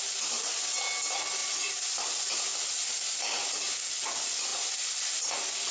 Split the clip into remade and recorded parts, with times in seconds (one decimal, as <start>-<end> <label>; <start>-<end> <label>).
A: 0.0-1.4 recorded; 1.4-1.9 remade; 1.9-5.7 recorded